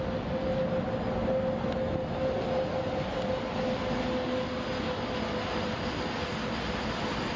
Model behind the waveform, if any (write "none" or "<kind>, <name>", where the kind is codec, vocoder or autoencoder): none